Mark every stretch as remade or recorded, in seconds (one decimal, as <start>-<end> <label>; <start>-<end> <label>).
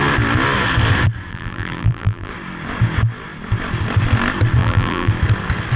0.0-1.3 recorded; 1.3-2.3 remade; 2.3-4.6 recorded; 4.6-5.1 remade; 5.1-5.8 recorded